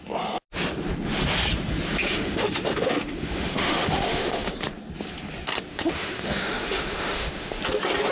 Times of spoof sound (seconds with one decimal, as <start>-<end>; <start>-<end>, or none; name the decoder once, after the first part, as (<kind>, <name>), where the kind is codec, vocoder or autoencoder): 2.0-4.5 (autoencoder, DAC-VAE); 5.7-7.6